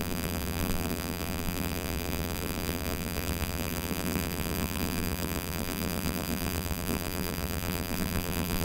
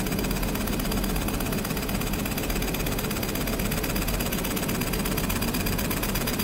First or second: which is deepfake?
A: first